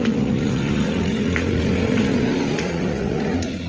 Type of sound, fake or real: fake